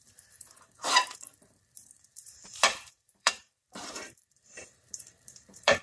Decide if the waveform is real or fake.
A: fake